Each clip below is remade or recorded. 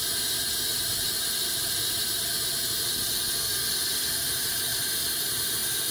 recorded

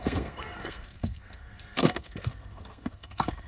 remade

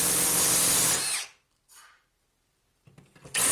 recorded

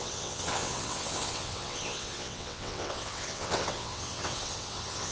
remade